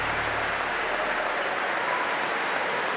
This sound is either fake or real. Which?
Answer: real